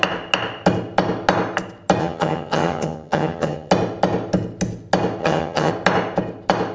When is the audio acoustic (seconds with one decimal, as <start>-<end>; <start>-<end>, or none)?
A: 0.0-2.0; 3.7-5.2; 5.7-6.7